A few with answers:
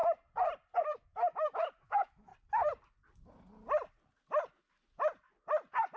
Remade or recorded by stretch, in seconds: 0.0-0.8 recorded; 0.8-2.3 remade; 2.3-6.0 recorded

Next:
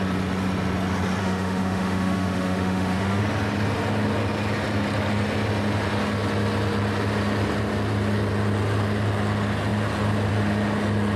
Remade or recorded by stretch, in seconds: 0.0-1.2 recorded; 1.2-3.2 remade; 3.2-11.2 recorded

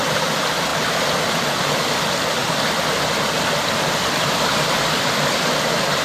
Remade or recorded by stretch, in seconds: 0.0-6.0 recorded